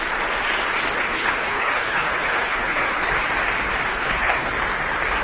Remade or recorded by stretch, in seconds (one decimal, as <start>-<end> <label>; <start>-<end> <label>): 0.0-1.1 recorded; 1.1-3.1 remade; 3.1-3.9 recorded; 3.9-4.5 remade; 4.5-5.2 recorded